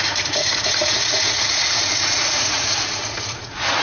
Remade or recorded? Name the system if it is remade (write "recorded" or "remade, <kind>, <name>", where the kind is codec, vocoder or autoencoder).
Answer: remade, vocoder, Vocos